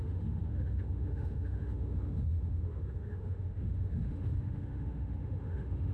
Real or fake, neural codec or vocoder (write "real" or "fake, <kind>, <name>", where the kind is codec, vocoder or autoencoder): fake, autoencoder, DAC-VAE